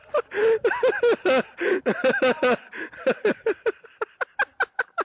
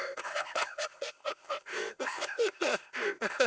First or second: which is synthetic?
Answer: second